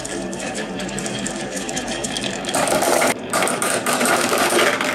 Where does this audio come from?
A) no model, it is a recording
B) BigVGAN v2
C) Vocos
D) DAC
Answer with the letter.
D